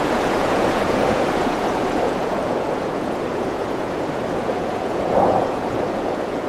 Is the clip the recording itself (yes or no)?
no